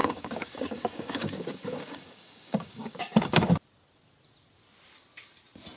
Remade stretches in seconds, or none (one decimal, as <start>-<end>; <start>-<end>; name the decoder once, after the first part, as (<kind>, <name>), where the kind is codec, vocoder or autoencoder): 0.0-3.5 (codec, DAC)